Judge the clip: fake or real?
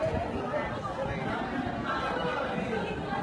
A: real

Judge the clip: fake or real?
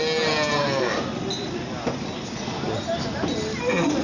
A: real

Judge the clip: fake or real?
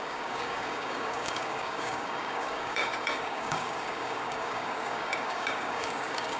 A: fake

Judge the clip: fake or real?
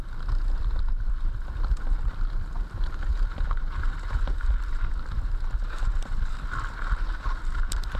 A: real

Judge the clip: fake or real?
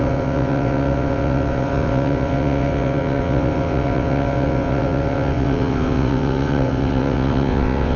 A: fake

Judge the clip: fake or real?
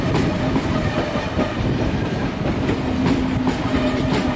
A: real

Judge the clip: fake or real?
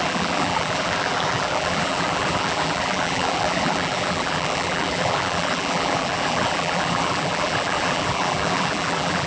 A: fake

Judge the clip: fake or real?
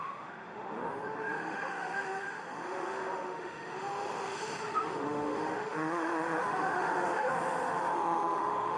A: fake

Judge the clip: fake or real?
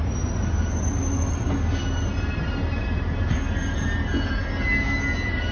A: real